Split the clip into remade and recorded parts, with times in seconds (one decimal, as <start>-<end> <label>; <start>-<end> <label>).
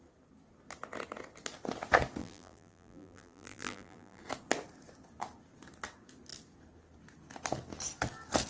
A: 0.0-2.2 recorded; 2.2-4.2 remade; 4.2-8.5 recorded